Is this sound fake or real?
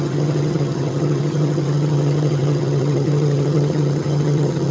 fake